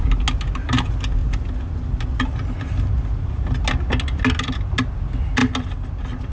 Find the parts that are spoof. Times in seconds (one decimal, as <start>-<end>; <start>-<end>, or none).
none